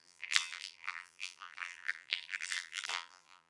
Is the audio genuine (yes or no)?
no